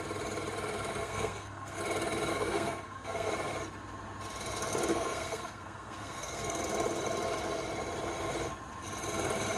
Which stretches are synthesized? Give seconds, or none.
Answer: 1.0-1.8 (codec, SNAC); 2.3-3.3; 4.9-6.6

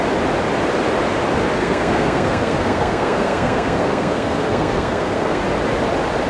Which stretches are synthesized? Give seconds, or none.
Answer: 1.6-5.4 (codec, SNAC)

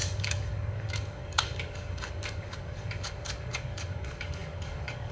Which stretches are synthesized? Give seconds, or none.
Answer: 0.0-5.1 (codec, DAC)